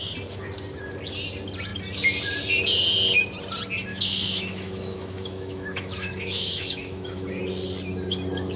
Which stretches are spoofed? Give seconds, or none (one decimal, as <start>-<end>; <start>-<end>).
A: 3.9-7.4